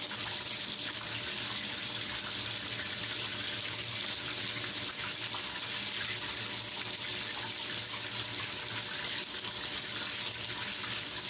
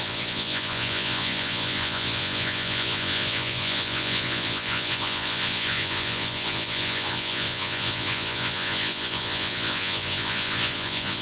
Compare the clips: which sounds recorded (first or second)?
first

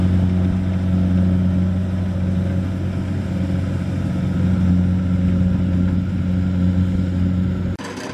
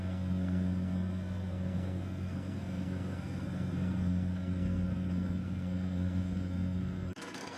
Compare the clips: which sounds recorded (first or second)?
first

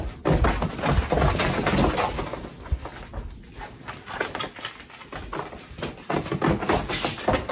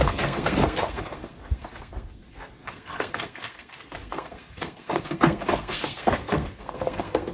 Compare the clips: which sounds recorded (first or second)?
first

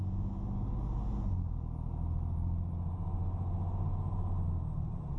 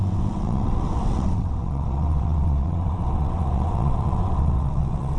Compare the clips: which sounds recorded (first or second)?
first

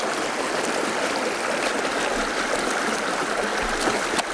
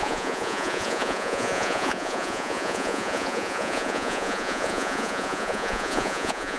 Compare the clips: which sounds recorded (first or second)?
first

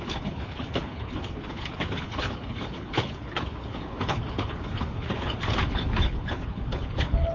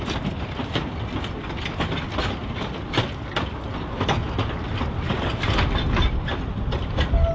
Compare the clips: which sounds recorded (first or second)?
second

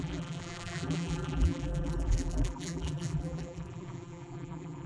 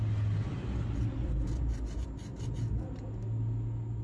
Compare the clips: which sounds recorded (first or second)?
second